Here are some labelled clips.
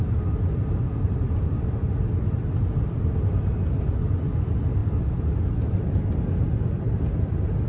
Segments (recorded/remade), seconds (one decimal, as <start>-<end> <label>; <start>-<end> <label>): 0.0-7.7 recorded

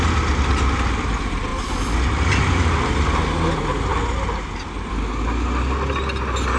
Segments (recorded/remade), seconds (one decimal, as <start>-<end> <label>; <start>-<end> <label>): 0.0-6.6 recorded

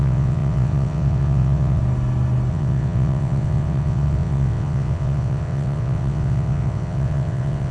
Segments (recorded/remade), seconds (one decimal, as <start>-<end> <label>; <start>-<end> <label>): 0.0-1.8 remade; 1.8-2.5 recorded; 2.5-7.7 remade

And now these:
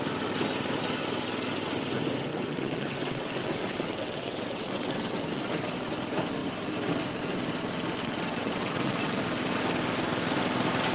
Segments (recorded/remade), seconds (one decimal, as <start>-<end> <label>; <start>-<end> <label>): 0.0-2.3 recorded; 2.3-5.4 remade; 5.4-8.0 recorded; 8.0-9.2 remade; 9.2-10.9 recorded

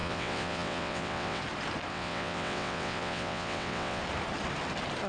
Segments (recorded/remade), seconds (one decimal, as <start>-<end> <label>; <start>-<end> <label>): 0.0-1.4 remade; 1.4-1.9 recorded; 1.9-4.0 remade; 4.0-5.1 recorded

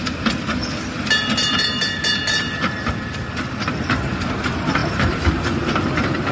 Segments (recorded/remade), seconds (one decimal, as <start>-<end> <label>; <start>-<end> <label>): 0.0-6.3 recorded